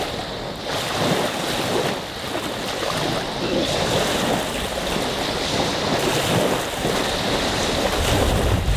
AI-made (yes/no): no